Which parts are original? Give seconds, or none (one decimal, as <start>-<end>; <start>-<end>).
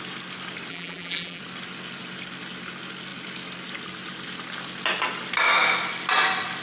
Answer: 0.0-0.7; 1.4-6.6